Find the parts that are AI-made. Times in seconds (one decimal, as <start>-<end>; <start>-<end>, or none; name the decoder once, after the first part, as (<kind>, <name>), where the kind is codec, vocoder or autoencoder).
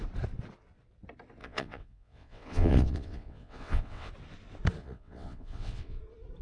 1.4-4.1 (vocoder, WaveNeXt); 4.8-6.0